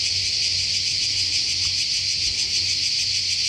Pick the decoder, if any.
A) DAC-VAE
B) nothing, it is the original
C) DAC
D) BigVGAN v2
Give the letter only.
B